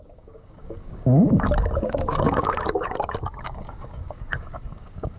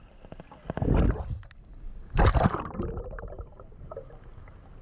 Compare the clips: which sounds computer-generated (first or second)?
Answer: first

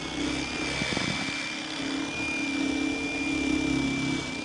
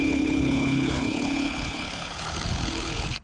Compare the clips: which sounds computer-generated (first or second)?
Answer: second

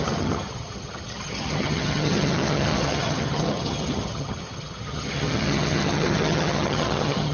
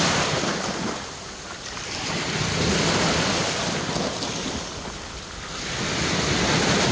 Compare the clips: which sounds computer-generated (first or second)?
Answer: first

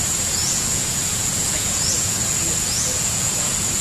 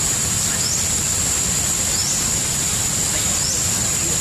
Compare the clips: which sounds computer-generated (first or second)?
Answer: first